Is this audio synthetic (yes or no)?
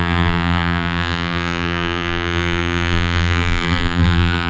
yes